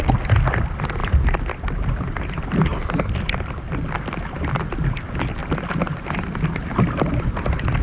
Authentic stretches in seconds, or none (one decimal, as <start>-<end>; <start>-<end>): 0.0-7.8